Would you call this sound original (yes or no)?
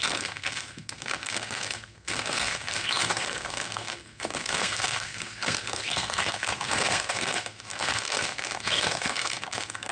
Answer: no